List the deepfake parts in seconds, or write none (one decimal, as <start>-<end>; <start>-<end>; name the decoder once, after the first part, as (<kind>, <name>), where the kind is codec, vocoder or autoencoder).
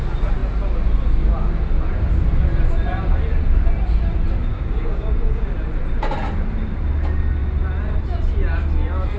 4.5-5.4 (codec, DAC)